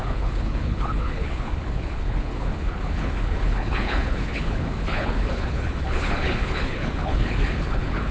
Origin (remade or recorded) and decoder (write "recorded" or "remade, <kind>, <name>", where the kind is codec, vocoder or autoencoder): remade, codec, HILCodec